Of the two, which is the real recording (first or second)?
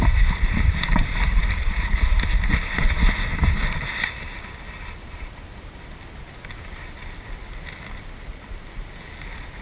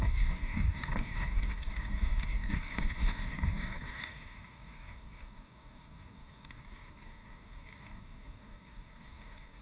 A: first